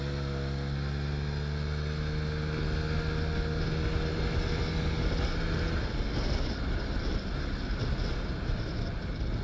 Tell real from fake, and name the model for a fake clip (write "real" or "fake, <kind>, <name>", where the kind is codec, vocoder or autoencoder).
real